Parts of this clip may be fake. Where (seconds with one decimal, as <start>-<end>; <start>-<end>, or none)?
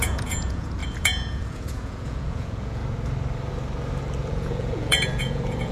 0.0-2.8; 4.2-5.7